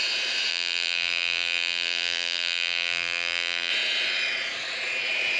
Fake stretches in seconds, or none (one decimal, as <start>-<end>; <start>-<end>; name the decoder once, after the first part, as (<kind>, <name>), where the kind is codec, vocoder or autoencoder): 0.5-3.7 (vocoder, BigVGAN v2)